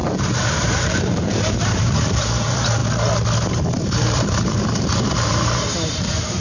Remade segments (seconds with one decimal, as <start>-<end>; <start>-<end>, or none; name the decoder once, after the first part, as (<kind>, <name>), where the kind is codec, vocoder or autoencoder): 0.0-2.8 (vocoder, BigVGAN v2); 3.5-6.4